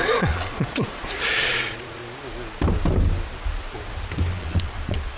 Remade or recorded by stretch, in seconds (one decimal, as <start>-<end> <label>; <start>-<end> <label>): 0.0-2.0 remade; 2.0-4.3 recorded; 4.3-5.2 remade